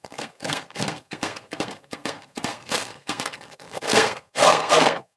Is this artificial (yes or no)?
yes